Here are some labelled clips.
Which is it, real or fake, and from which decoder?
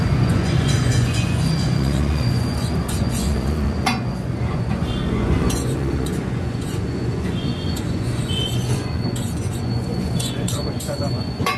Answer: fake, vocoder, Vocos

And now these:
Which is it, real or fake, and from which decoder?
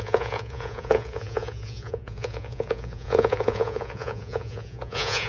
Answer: fake, vocoder, Vocos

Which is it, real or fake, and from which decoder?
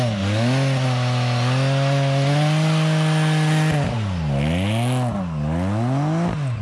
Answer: real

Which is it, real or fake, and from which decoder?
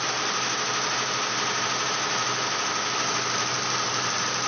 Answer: real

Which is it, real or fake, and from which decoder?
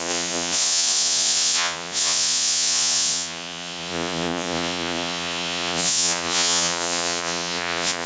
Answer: fake, vocoder, Vocos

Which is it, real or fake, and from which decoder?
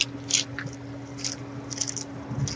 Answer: real